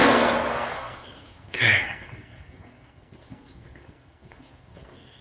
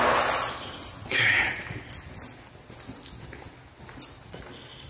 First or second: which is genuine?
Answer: second